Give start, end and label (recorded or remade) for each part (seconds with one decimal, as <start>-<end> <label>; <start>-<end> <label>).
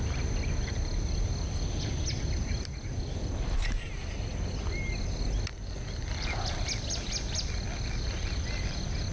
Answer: 0.0-9.1 recorded